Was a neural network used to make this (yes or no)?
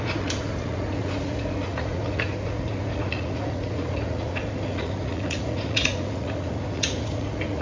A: yes